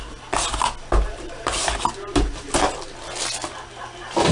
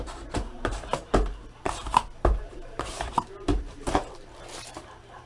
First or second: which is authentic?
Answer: first